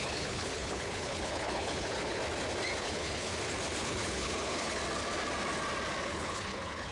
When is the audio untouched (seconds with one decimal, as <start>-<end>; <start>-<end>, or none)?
2.2-2.8; 3.3-3.8; 4.8-6.0